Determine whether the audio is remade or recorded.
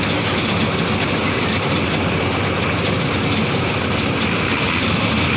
recorded